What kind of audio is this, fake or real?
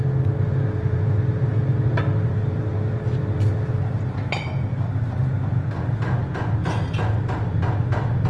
real